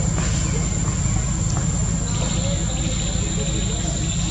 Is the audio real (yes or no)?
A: yes